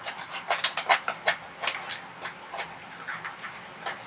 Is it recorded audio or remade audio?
recorded